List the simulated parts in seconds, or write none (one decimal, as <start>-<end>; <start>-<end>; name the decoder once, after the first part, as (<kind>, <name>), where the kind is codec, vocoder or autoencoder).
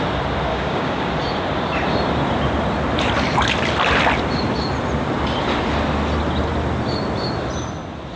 0.5-1.1 (codec, DAC)